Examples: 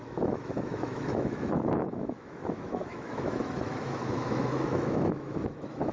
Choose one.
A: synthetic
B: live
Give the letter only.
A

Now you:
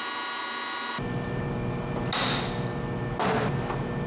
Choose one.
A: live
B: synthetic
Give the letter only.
A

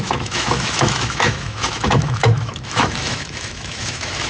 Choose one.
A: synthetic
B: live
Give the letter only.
A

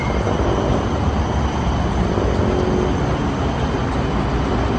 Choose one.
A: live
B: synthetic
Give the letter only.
A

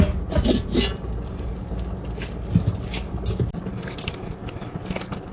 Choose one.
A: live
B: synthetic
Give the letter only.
A